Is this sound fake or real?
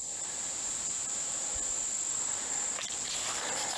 real